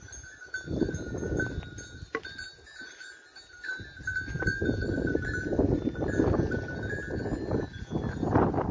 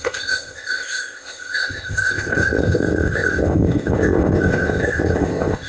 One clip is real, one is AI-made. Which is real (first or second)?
first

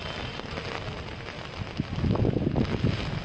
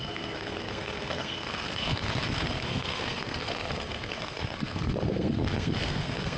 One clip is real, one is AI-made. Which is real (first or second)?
first